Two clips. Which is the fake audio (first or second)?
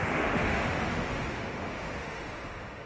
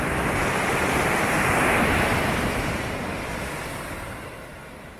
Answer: first